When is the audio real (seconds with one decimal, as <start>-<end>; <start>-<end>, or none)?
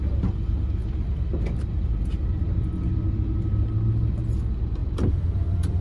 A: 0.0-4.8